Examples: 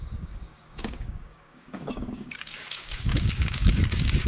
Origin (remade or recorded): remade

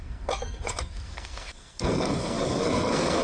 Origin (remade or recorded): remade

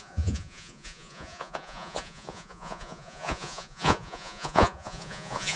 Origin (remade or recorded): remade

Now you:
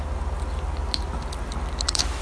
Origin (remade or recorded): recorded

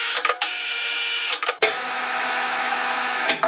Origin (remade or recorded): remade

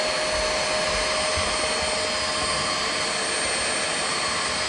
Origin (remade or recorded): recorded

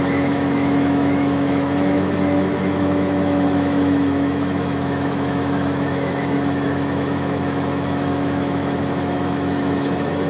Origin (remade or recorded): remade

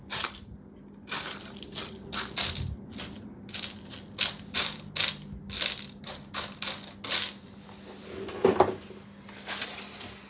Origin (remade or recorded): recorded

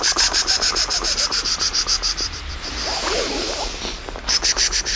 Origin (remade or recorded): remade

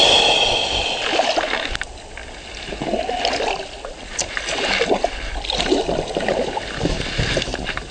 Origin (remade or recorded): recorded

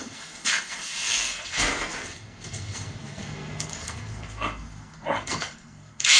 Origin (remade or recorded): remade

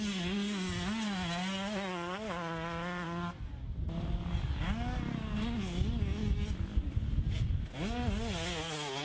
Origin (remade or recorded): recorded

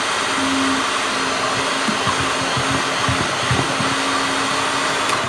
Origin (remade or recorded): recorded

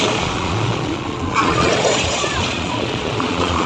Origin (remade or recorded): remade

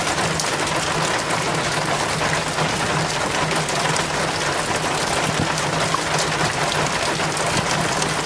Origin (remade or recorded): recorded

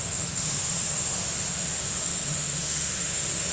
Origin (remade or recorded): remade